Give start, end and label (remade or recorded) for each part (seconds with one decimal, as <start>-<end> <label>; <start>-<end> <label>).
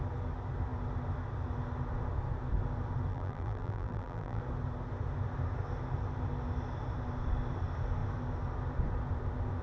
0.0-3.1 recorded; 3.1-4.4 remade; 4.4-9.6 recorded